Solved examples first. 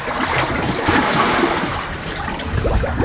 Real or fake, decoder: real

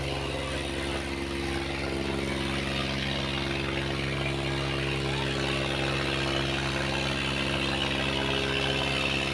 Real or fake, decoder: real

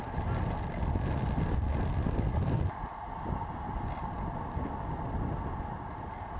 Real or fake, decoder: real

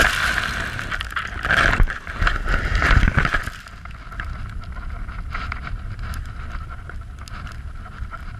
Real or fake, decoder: real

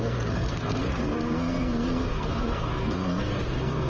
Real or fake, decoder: fake, codec, SNAC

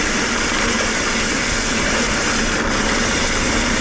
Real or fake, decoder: real